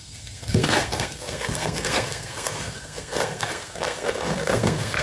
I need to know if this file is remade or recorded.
remade